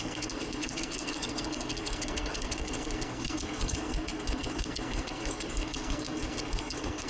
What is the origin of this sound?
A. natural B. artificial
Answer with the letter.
B